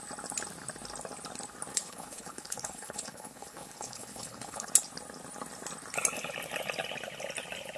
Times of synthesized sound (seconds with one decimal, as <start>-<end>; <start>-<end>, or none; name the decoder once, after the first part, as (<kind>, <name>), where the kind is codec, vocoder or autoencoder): 1.7-4.7 (codec, HILCodec)